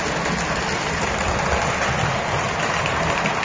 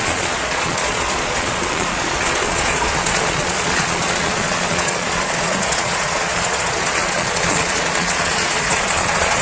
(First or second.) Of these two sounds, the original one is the first